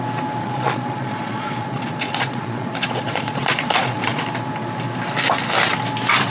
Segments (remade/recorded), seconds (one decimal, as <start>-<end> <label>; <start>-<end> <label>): 0.0-0.4 recorded; 0.4-4.2 remade; 4.2-6.3 recorded